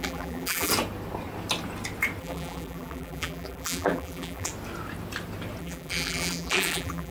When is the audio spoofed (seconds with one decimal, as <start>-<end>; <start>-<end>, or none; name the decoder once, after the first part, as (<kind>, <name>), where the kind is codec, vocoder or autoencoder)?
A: 0.0-0.7 (vocoder, BigVGAN v2); 2.2-4.5; 5.6-7.1